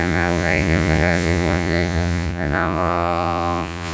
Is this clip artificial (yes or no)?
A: yes